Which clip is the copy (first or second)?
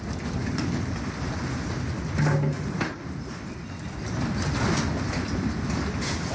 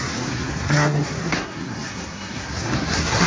second